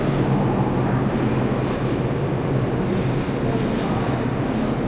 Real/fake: real